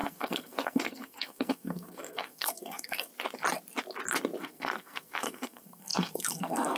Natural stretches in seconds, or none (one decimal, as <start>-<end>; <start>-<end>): 3.1-4.4